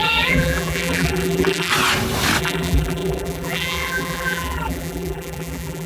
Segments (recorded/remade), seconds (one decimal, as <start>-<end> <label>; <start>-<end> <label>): 0.0-1.7 remade; 1.7-2.4 recorded; 2.4-5.9 remade